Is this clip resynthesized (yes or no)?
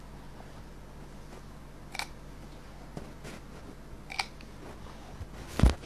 no